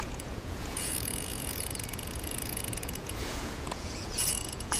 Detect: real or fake fake